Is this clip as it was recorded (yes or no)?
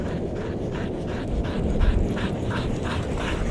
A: yes